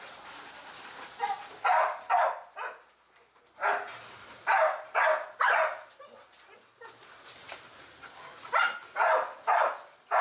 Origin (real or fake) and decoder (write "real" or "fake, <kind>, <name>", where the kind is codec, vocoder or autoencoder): real